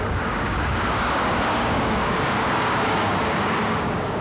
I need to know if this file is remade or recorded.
remade